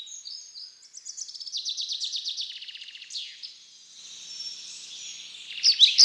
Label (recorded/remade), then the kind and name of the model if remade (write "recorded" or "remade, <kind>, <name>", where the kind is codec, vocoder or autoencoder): recorded